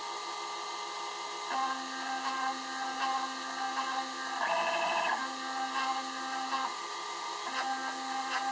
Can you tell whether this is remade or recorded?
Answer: recorded